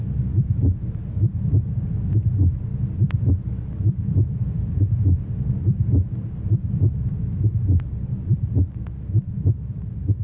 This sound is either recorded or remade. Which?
recorded